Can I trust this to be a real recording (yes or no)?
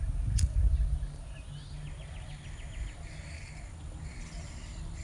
yes